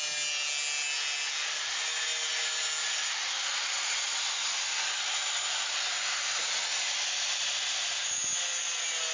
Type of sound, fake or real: real